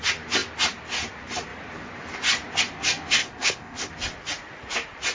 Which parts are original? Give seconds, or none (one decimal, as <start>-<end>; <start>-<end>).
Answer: 0.0-3.2; 3.9-5.1